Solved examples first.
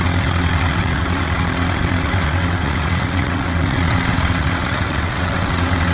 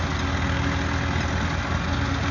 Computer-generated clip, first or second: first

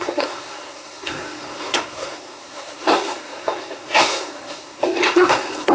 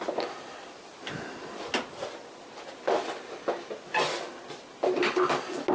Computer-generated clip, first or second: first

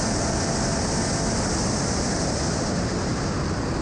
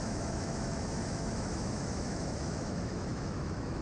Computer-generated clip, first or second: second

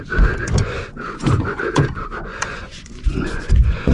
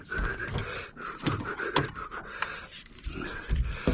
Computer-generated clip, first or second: first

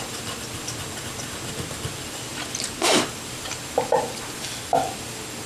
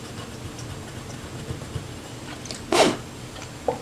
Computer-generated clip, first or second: first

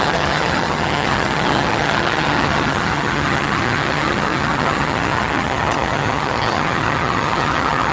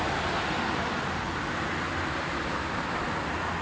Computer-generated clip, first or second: first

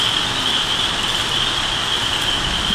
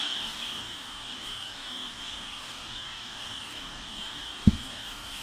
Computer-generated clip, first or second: second